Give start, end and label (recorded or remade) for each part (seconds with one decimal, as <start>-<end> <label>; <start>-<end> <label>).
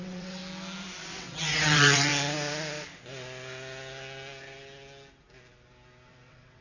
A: 0.0-0.4 remade; 0.4-1.2 recorded; 1.2-2.1 remade; 2.1-6.1 recorded; 6.1-6.6 remade